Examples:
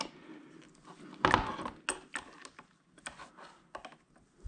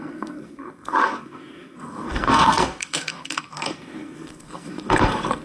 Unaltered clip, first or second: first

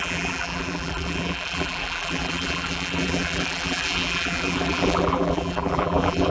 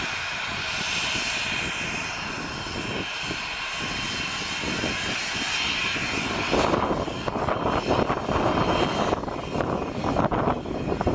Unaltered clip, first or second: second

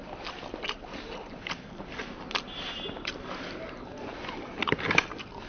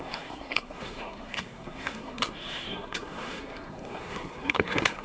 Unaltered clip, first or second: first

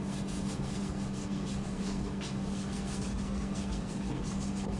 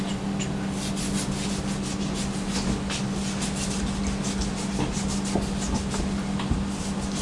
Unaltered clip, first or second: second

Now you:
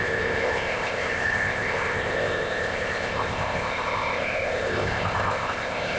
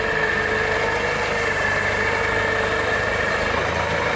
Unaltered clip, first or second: second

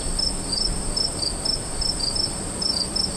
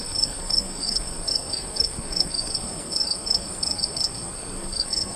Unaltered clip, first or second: first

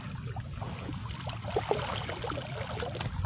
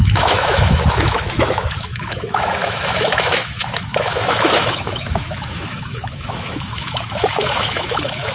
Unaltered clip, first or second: first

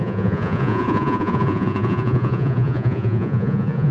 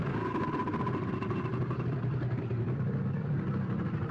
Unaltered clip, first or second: second